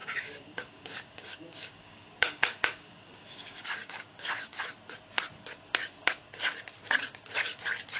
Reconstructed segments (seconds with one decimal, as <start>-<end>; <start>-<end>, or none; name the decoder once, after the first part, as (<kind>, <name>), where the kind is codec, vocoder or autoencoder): 0.0-4.6 (codec, DAC)